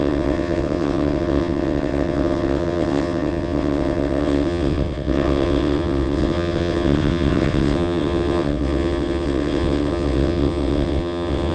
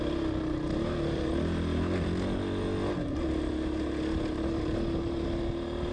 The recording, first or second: second